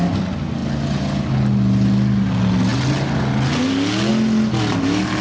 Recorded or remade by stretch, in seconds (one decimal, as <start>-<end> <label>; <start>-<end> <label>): 0.0-5.2 recorded